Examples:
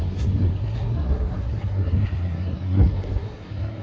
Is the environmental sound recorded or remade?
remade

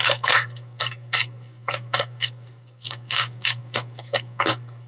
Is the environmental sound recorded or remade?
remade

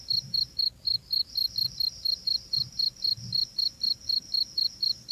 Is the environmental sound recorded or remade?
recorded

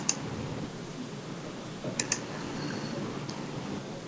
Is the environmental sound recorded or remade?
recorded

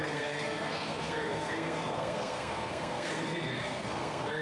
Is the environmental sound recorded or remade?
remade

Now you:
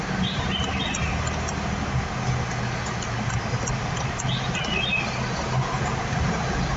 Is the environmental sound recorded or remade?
recorded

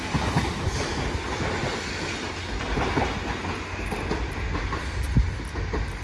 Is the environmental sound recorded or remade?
recorded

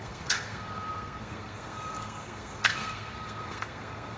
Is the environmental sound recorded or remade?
remade